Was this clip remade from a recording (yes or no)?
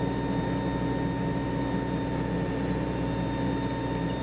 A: no